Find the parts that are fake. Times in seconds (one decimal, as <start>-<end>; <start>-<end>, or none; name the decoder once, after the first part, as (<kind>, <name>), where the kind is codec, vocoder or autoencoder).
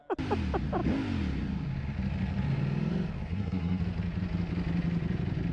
3.3-3.8 (codec, SNAC)